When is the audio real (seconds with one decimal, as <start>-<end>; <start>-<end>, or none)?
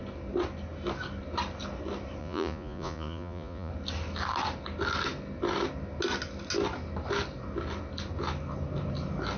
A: 0.0-2.2; 3.7-9.4